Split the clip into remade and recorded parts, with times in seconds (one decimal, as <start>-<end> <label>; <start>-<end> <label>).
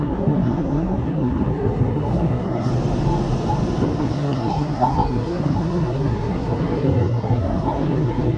0.0-2.7 remade; 2.7-4.0 recorded; 4.0-8.4 remade